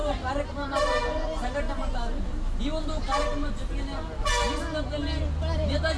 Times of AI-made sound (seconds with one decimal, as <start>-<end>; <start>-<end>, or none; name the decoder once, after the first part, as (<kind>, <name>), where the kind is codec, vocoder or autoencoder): 0.0-2.6 (vocoder, BigVGAN v2)